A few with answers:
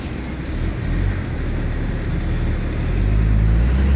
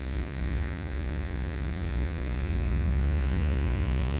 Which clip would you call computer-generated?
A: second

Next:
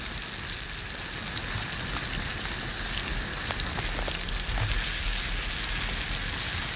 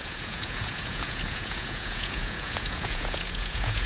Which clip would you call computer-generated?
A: second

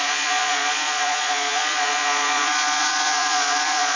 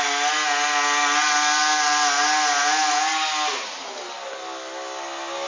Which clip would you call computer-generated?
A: first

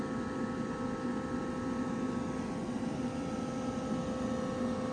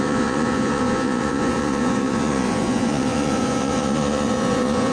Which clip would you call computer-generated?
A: second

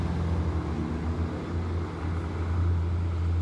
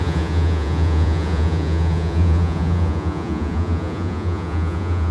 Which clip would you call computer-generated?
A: second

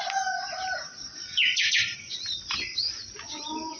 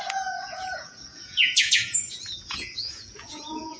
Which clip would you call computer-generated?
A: second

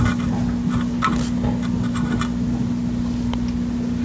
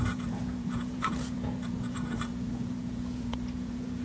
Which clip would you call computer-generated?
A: second